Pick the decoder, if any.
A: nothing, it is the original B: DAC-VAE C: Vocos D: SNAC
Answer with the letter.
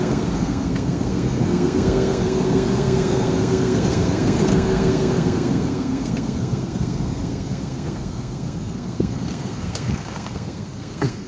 D